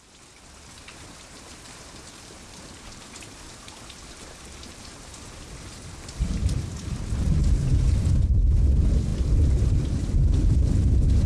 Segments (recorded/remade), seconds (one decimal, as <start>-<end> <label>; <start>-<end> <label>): 0.0-7.4 remade; 7.4-8.2 recorded; 8.2-11.3 remade